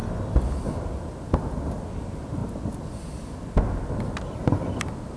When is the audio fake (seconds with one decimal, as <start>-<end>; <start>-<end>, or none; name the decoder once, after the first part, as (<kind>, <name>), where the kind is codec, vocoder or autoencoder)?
none